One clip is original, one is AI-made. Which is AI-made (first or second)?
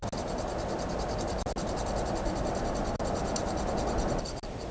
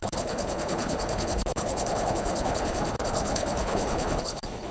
second